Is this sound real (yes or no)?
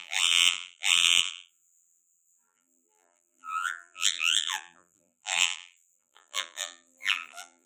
no